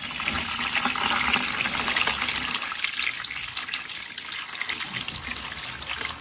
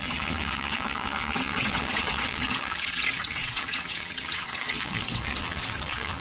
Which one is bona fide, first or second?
first